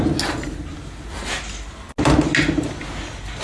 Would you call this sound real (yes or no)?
yes